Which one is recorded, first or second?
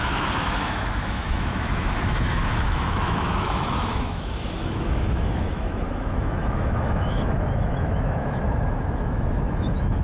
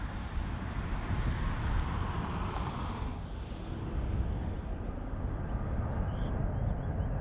second